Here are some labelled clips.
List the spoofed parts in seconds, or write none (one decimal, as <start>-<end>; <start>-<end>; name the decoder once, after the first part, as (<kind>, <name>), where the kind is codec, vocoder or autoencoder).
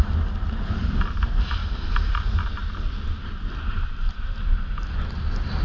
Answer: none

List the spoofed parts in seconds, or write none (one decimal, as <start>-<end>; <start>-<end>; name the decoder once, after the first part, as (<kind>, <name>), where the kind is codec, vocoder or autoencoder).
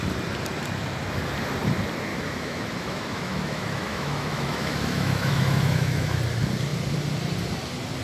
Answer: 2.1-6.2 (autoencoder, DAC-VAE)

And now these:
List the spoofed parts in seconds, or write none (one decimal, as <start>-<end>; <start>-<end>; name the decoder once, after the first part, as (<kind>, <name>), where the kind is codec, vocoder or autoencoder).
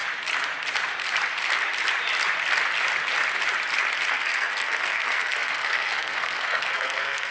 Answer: 4.1-7.3 (codec, SNAC)